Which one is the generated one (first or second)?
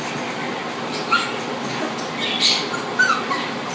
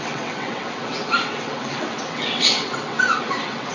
second